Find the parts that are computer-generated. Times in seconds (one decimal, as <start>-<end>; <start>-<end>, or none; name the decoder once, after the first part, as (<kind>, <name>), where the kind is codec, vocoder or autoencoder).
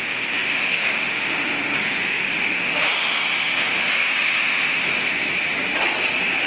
0.0-5.1 (autoencoder, DAC-VAE)